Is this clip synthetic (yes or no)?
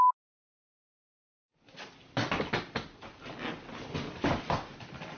no